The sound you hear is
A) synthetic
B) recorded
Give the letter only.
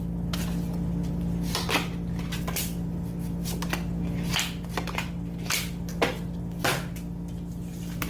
B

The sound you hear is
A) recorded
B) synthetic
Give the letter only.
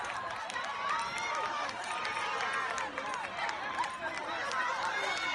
A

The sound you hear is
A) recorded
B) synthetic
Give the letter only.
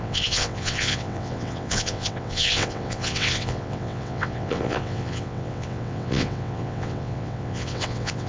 B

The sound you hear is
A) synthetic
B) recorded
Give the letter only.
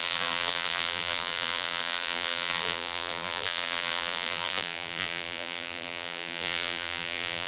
A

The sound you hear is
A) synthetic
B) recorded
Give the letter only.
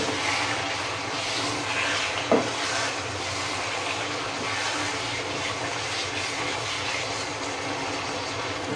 B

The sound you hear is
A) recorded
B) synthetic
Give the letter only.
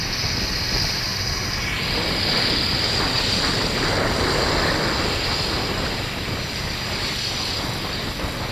A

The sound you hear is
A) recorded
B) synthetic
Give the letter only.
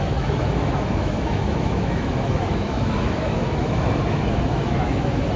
B